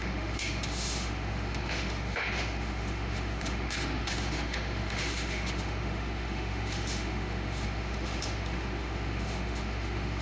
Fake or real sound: fake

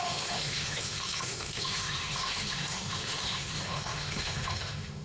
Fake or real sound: fake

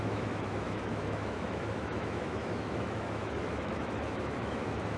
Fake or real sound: fake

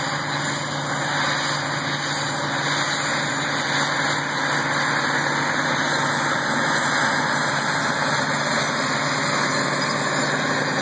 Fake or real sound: real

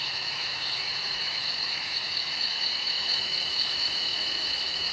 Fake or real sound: fake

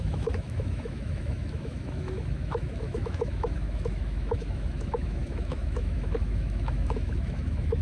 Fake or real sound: fake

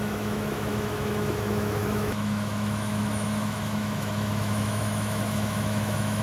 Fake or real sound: fake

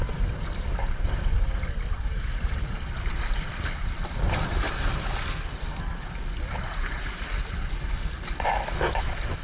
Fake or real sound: real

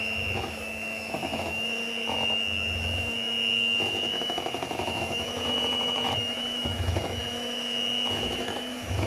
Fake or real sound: fake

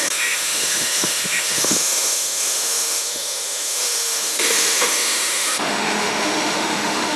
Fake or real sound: fake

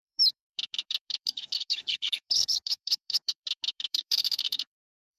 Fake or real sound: fake